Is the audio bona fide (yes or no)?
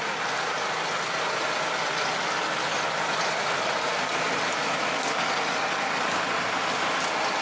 yes